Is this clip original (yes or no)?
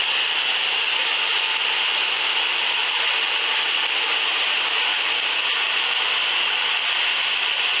yes